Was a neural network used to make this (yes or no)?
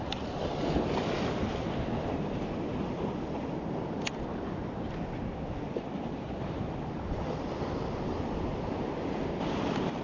no